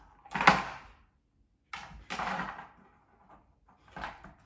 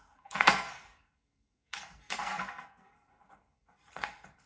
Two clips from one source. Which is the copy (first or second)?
second